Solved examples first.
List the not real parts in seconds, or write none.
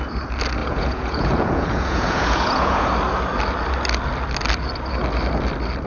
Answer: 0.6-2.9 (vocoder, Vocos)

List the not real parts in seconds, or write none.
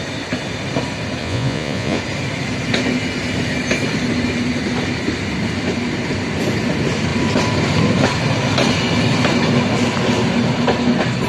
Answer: 1.2-2.0 (vocoder, Vocos)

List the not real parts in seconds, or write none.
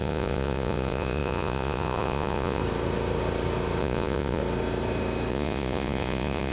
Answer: 0.0-2.6 (vocoder, Vocos); 3.8-4.4; 5.3-6.5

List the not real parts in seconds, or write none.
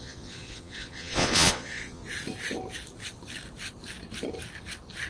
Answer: 0.0-2.0 (vocoder, Vocos)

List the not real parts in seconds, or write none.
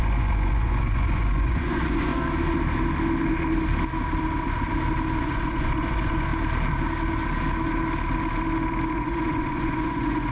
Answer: 0.0-2.1 (vocoder, Vocos); 5.2-6.3; 8.9-10.3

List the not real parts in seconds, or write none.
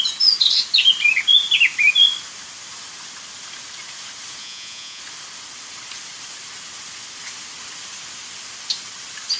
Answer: 4.4-5.0 (vocoder, Vocos)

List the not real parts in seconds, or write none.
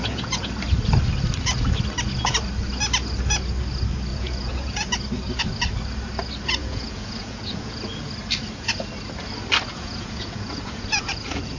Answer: 0.0-0.5 (vocoder, Vocos); 4.1-5.0; 6.6-8.1; 9.7-11.6